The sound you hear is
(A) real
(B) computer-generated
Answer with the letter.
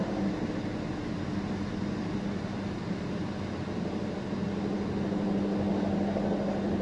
A